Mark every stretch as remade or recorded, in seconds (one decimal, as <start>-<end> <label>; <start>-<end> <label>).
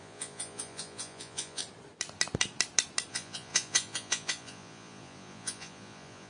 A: 0.0-1.6 remade; 1.6-3.1 recorded; 3.1-6.3 remade